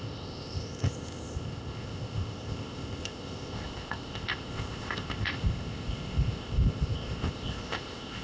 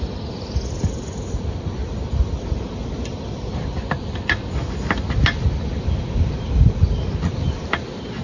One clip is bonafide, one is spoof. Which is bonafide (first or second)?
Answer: second